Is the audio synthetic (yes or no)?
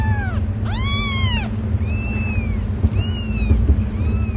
no